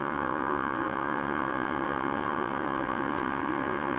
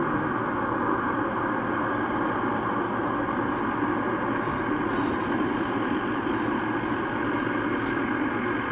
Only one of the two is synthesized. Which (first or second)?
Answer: first